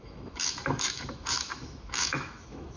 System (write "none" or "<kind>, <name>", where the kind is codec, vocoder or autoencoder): autoencoder, DAC-VAE